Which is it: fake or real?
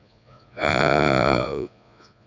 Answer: fake